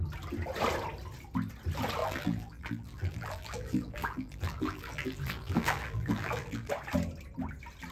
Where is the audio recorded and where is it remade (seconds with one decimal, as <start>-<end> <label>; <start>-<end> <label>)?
0.0-2.0 recorded; 2.0-6.7 remade; 6.7-7.9 recorded